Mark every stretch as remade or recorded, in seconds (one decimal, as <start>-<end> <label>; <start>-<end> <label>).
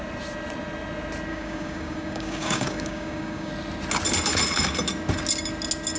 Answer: 0.0-1.3 recorded; 1.3-3.5 remade; 3.5-6.0 recorded